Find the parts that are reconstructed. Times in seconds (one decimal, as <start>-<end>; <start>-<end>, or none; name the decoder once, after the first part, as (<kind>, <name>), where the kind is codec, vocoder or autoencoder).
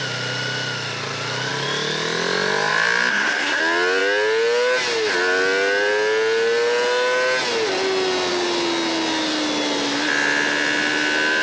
3.1-3.6 (codec, SNAC)